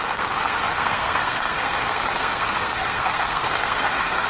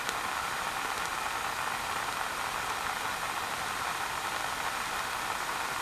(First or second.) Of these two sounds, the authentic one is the second